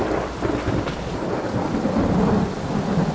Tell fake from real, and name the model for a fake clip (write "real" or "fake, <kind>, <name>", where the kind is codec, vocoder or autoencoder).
fake, vocoder, BigVGAN v2